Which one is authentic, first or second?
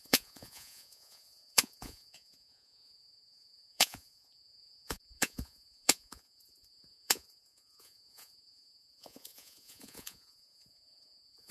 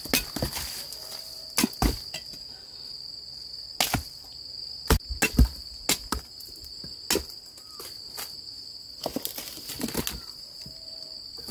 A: second